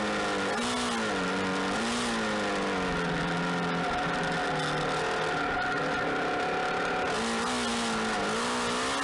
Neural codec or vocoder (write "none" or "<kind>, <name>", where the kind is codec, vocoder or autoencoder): none